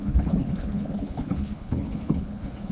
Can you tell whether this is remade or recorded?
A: remade